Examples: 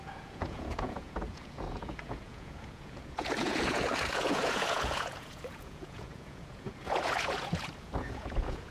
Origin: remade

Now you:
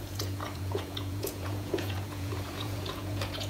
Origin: remade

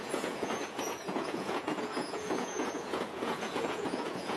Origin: remade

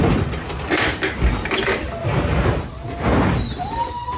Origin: recorded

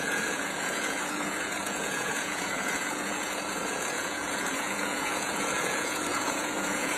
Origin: remade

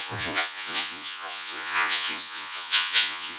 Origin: remade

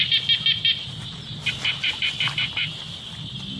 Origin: recorded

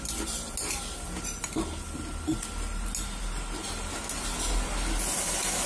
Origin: recorded